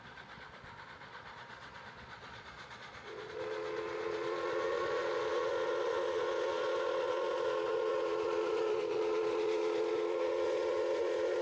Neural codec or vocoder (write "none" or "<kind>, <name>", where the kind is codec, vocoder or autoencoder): vocoder, Vocos